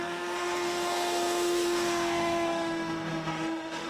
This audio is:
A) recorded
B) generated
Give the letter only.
B